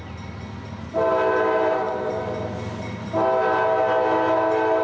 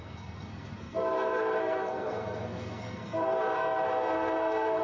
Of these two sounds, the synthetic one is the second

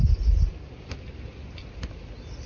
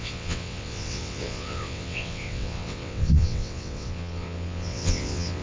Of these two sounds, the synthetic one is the second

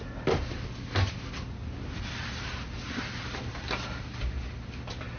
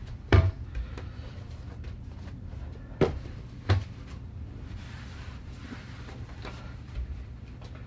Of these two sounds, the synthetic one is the second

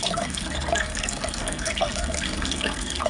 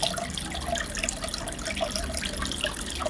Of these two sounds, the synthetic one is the first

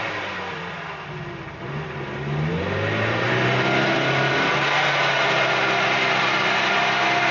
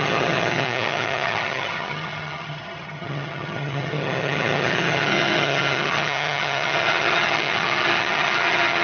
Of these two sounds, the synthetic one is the second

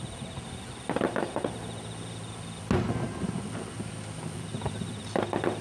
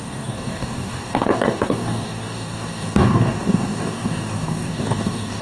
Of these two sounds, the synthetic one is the second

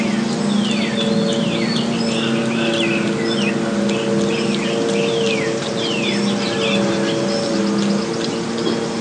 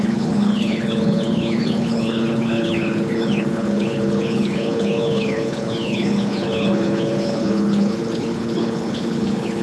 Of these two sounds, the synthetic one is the second